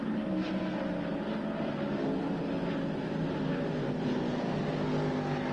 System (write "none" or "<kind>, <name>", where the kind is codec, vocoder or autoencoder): none